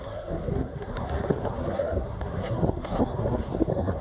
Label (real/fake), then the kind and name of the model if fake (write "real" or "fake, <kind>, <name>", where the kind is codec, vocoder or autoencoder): fake, codec, SNAC